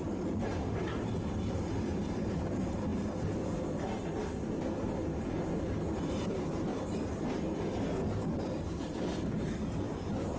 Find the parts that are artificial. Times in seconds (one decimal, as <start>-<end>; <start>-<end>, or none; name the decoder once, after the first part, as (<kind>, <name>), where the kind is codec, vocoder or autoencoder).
0.0-2.9 (vocoder, BigVGAN v2); 6.0-6.7; 8.6-10.4